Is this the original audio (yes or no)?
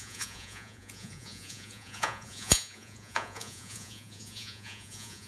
no